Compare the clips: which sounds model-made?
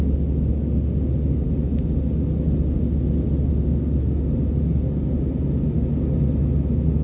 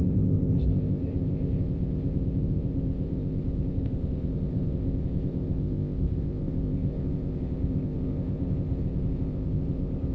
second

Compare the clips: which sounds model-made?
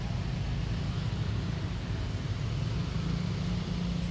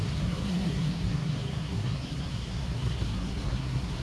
second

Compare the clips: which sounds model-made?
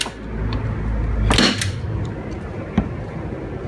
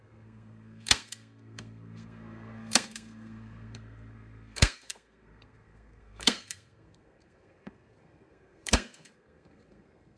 second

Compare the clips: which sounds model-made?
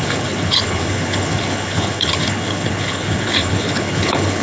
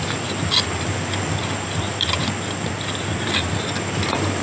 first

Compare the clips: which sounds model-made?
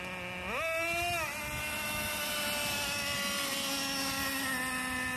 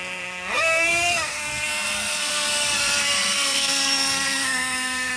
second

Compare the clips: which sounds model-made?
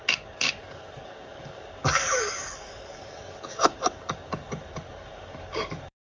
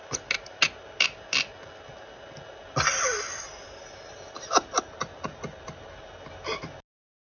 first